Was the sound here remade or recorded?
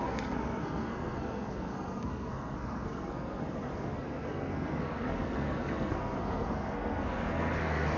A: remade